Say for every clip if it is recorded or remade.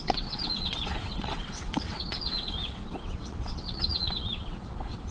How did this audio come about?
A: remade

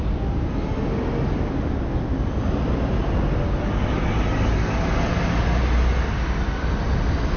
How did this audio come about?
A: recorded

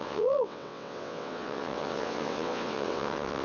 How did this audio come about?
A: remade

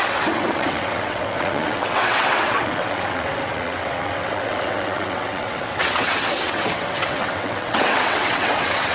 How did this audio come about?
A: remade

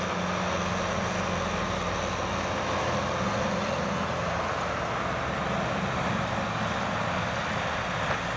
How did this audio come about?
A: recorded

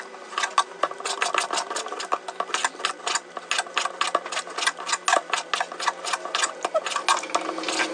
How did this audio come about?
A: recorded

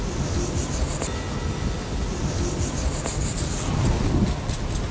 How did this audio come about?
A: recorded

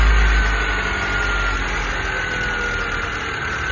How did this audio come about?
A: recorded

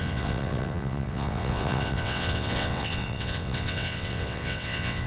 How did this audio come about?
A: remade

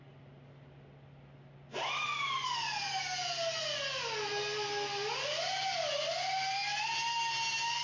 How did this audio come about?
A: recorded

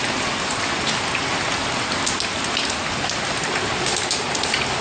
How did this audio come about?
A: recorded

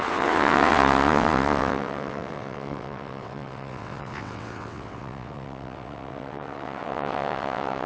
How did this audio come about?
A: remade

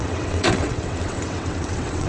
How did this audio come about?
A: remade